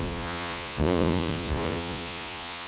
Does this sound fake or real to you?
fake